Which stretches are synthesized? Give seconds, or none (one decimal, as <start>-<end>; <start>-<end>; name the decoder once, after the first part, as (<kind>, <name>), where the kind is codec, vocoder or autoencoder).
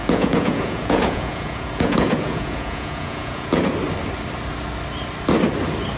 0.0-3.6 (vocoder, Vocos)